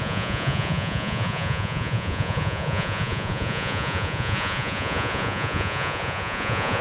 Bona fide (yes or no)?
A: no